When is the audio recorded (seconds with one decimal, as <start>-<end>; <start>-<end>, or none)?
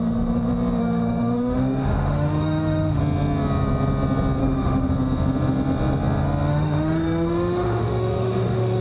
0.0-0.8; 3.0-4.4; 4.9-6.5